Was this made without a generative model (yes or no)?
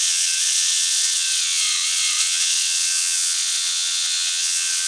no